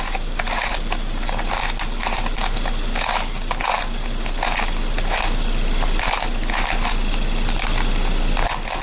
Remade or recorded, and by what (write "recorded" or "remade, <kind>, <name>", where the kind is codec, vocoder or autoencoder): recorded